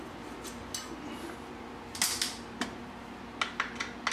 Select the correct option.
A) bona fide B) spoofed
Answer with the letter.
A